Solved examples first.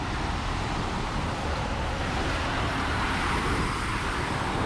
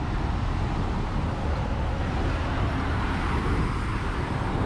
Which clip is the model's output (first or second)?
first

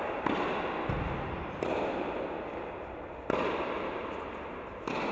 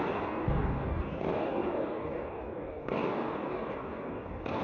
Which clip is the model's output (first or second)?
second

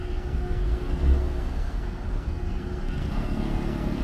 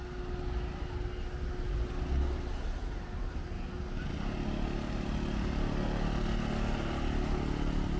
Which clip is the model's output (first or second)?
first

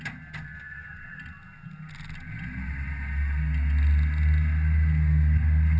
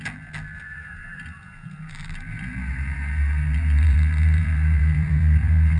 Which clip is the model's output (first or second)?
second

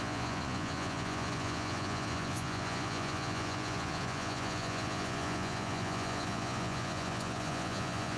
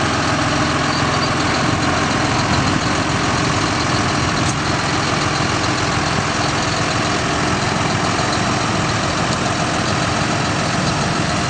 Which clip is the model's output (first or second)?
first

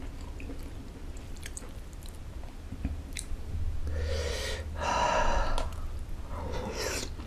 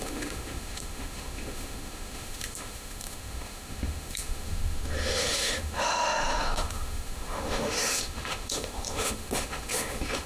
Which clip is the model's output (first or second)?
second